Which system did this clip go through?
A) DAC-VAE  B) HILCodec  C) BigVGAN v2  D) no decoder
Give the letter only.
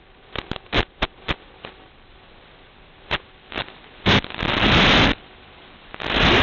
D